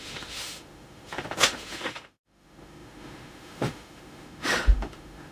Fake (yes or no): yes